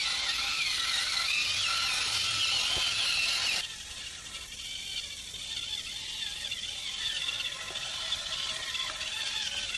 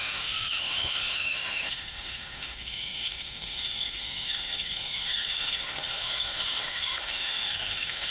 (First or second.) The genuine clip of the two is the first